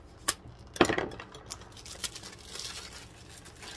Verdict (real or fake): real